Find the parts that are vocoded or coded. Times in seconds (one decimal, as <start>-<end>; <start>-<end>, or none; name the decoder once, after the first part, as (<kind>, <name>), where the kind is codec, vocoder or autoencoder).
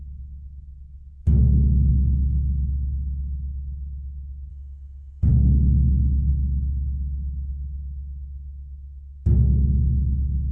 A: 4.5-5.3 (codec, HILCodec)